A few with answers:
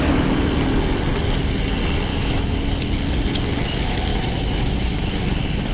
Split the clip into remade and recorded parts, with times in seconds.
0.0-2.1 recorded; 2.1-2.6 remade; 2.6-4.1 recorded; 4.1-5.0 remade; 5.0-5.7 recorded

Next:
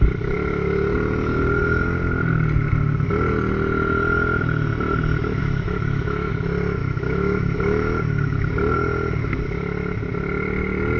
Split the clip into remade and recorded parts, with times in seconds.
0.0-5.4 recorded; 5.4-6.3 remade; 6.3-6.8 recorded; 6.8-8.5 remade; 8.5-11.0 recorded

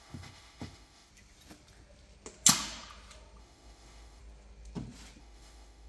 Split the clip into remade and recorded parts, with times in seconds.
0.0-1.1 remade; 1.1-3.4 recorded; 3.4-4.2 remade; 4.2-5.2 recorded; 5.2-5.9 remade

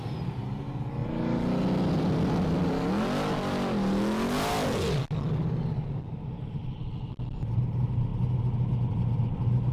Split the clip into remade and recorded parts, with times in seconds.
0.0-9.7 recorded

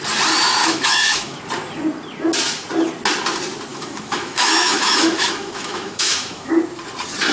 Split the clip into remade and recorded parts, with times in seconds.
0.0-0.6 recorded; 0.6-1.4 remade; 1.4-3.7 recorded; 3.7-6.5 remade; 6.5-7.3 recorded

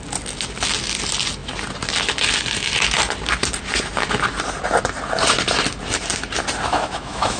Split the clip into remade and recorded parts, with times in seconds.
0.0-6.7 recorded; 6.7-7.4 remade